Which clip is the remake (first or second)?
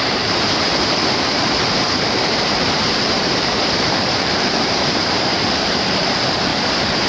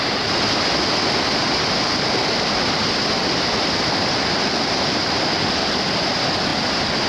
first